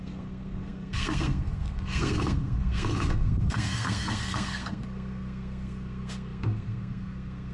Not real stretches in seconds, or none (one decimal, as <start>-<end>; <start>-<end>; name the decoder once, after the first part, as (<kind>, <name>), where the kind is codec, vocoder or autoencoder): 0.0-7.5 (codec, SNAC)